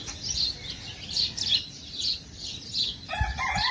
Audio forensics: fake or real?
real